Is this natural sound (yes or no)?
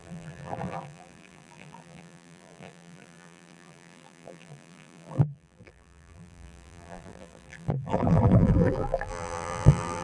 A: no